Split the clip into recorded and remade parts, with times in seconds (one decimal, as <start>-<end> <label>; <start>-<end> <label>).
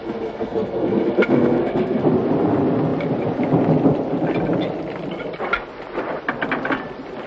0.0-2.1 remade; 2.1-7.3 recorded